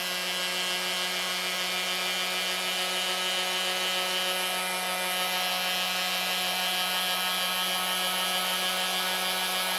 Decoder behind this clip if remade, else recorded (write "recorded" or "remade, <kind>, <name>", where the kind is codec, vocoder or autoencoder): recorded